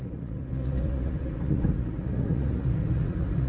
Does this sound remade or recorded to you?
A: remade